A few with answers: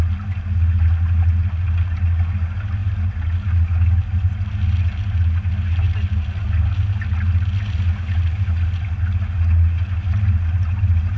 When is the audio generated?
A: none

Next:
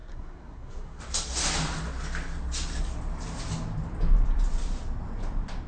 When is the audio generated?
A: 0.0-1.0 (codec, SNAC)